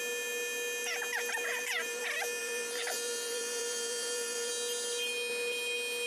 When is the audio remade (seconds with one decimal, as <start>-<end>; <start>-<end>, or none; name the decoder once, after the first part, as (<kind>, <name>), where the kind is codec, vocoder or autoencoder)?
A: 1.4-2.0 (vocoder, BigVGAN v2); 2.4-4.5